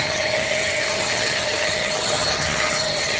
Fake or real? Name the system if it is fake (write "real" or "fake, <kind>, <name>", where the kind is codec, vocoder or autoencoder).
fake, vocoder, HiFi-GAN